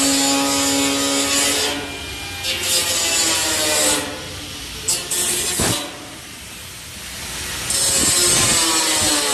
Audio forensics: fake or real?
real